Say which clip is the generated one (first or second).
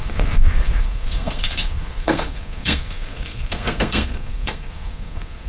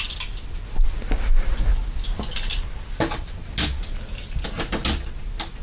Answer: first